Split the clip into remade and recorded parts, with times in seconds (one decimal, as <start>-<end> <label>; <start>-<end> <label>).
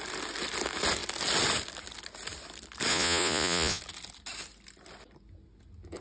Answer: 0.0-2.9 recorded; 2.9-3.8 remade; 3.8-6.0 recorded